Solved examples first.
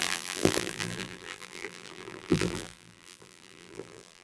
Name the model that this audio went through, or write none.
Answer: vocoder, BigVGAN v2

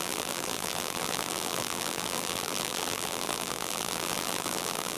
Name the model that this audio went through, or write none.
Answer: vocoder, BigVGAN v2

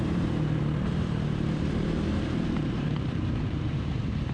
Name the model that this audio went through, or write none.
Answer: vocoder, BigVGAN v2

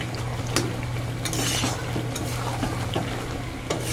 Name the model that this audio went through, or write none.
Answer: none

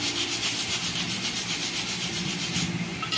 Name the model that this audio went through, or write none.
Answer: vocoder, BigVGAN v2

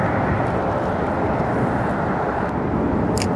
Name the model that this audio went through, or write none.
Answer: none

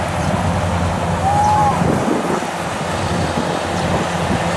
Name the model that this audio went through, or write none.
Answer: none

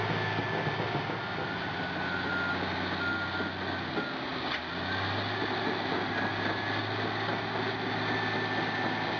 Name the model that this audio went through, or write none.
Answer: none